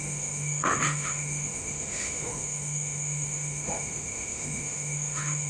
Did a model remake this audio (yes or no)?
yes